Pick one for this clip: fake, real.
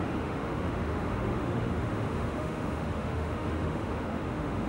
fake